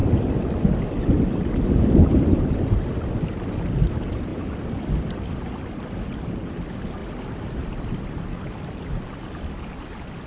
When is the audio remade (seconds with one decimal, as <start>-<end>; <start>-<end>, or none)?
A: none